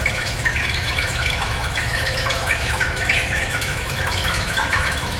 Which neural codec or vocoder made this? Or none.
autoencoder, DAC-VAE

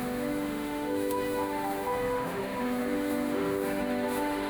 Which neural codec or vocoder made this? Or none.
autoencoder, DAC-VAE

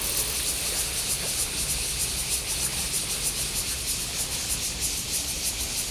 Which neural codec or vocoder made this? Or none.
none